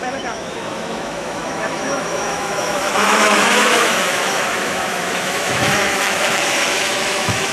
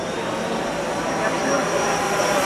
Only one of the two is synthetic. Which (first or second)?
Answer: first